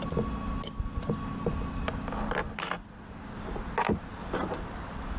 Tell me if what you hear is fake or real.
real